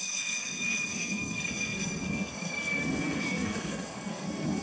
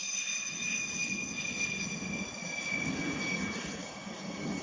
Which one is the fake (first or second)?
first